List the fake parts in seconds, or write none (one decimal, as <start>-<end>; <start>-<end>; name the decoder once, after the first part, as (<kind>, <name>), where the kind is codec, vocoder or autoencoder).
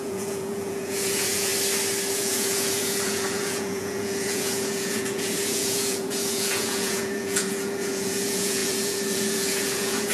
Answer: 0.0-1.5 (vocoder, Vocos); 2.1-10.1